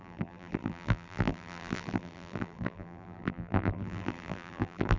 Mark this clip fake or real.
fake